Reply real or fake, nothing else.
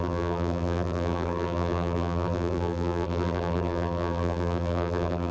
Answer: fake